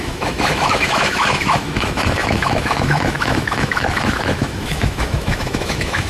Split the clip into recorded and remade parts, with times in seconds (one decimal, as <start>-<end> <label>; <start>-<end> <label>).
0.0-6.1 remade